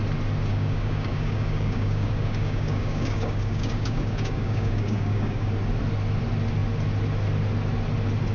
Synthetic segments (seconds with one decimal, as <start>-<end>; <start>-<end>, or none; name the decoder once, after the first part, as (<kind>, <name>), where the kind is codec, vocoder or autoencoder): 0.5-5.5 (codec, DAC)